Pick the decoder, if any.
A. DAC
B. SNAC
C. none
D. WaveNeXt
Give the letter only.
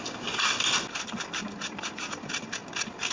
C